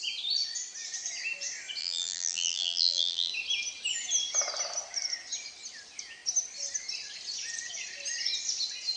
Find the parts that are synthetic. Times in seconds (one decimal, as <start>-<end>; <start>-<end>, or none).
1.8-3.3